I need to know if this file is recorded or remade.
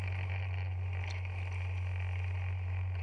recorded